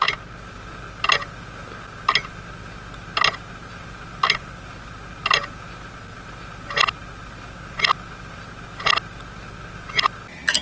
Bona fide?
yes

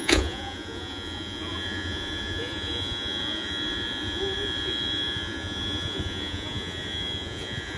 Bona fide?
no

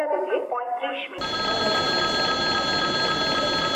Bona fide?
yes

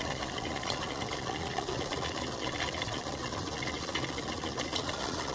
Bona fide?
no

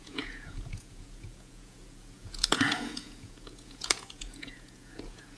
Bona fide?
no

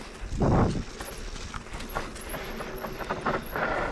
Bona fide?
yes